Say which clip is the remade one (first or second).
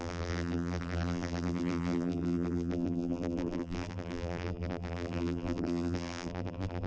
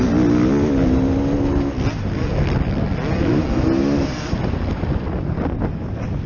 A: first